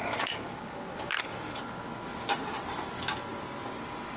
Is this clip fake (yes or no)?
no